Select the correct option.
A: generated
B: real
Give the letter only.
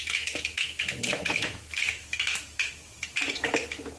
A